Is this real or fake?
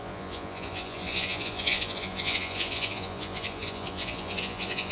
fake